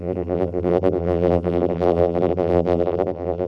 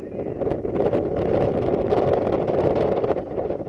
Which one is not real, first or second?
first